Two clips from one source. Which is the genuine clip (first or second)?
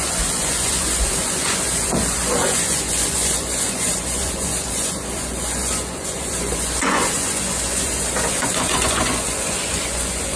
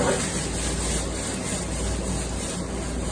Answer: second